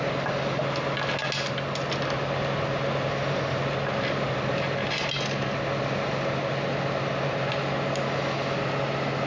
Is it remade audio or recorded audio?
recorded